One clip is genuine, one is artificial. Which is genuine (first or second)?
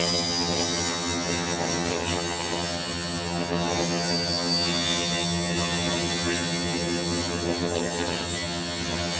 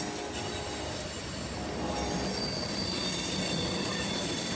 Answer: second